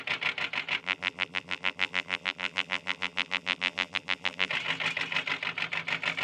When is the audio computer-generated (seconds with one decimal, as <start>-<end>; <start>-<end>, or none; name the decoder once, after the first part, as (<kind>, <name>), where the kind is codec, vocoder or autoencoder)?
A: 0.8-4.5 (vocoder, BigVGAN v2)